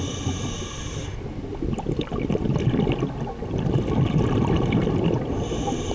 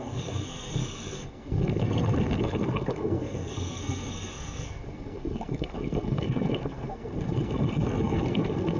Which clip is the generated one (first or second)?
second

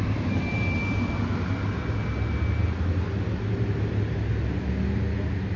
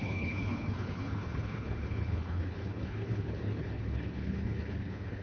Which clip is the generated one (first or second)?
second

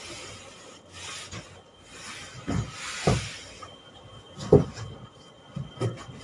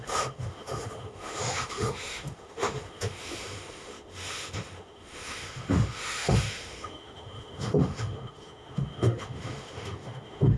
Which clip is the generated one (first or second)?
second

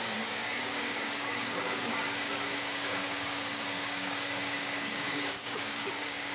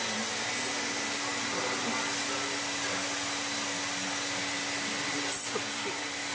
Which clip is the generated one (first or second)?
first